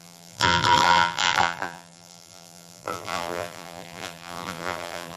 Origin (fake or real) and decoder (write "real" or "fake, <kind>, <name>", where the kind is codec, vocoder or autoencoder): fake, vocoder, BigVGAN v2